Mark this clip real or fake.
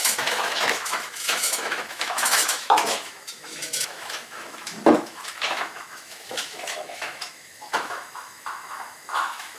fake